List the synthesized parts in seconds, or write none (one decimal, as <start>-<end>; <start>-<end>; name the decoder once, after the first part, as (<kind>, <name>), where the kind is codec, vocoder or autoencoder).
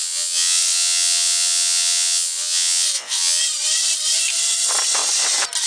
0.0-3.4 (vocoder, WaveNeXt)